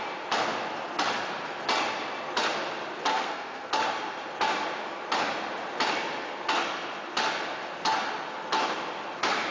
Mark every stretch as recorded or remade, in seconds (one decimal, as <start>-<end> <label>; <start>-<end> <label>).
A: 0.0-3.1 recorded; 3.1-3.7 remade; 3.7-9.5 recorded